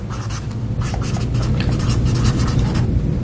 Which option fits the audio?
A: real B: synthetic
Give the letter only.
A